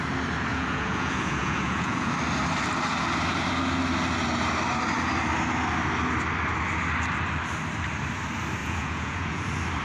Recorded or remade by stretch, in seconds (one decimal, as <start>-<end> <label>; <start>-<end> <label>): 0.0-0.5 recorded; 0.5-2.1 remade; 2.1-8.6 recorded; 8.6-9.4 remade; 9.4-9.8 recorded